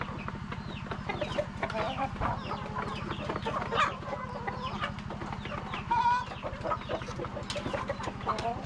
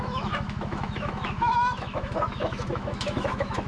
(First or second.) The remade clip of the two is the second